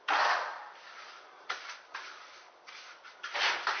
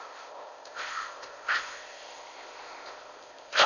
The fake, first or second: second